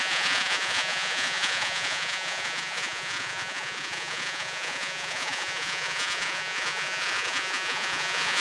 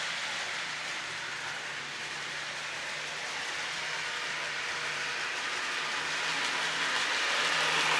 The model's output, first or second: first